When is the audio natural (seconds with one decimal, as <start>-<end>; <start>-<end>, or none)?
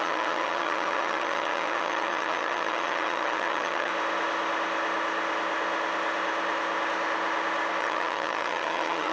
3.9-7.8